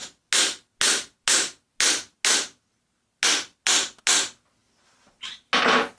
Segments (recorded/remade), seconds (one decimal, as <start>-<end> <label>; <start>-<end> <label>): 0.0-6.0 recorded